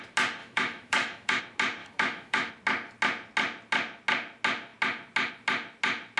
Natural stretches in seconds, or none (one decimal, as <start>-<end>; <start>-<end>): 0.0-0.4; 1.4-1.8; 2.5-6.2